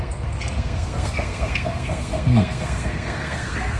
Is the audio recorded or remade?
remade